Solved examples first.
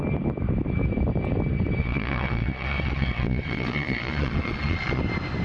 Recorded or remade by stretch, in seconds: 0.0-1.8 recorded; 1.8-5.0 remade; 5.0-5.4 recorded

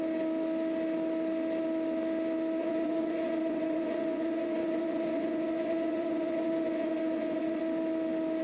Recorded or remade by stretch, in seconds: 0.0-2.6 recorded; 2.6-7.6 remade; 7.6-8.4 recorded

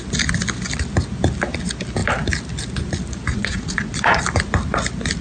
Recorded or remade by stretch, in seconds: 0.0-3.3 recorded; 3.3-4.2 remade; 4.2-5.2 recorded

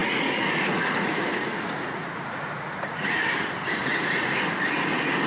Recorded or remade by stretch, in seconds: 0.0-3.2 remade; 3.2-3.8 recorded; 3.8-4.4 remade; 4.4-5.3 recorded

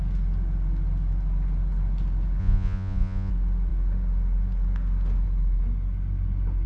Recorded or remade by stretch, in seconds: 0.0-2.4 recorded; 2.4-3.3 remade; 3.3-6.7 recorded

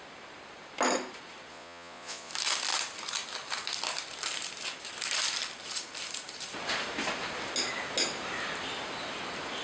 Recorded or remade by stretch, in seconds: 0.0-1.5 recorded; 1.5-2.3 remade; 2.3-9.6 recorded